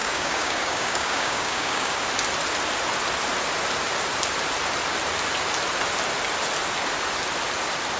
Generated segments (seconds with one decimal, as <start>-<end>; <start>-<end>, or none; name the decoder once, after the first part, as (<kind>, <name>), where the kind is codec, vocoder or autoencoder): 0.0-2.0 (codec, DAC)